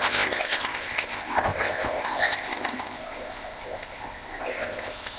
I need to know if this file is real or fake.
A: fake